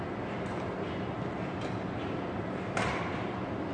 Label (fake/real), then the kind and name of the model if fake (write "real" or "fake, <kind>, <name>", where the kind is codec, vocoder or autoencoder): real